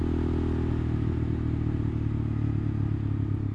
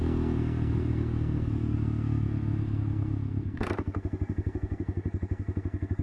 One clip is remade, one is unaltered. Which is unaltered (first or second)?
first